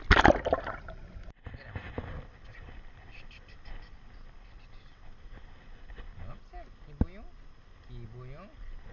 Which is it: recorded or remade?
recorded